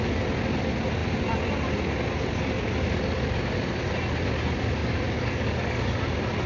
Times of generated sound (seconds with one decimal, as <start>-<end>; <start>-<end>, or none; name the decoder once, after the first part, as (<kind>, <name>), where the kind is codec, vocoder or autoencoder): 4.8-6.0 (codec, DAC)